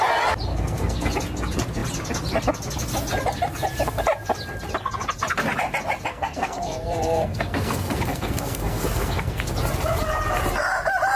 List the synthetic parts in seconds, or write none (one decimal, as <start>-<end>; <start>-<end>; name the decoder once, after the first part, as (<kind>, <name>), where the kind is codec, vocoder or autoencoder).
0.5-1.1 (codec, SNAC); 6.1-9.5